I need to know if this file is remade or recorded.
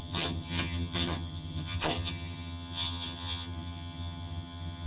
remade